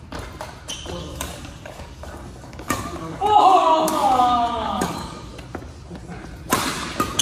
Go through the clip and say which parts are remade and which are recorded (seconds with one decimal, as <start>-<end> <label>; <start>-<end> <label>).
0.0-1.0 recorded; 1.0-5.3 remade; 5.3-7.2 recorded

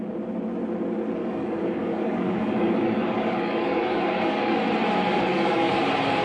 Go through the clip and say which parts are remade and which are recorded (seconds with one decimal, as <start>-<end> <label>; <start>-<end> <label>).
0.0-1.2 recorded; 1.2-4.6 remade; 4.6-5.1 recorded; 5.1-5.8 remade; 5.8-6.2 recorded